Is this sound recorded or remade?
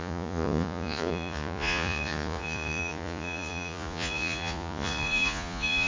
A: remade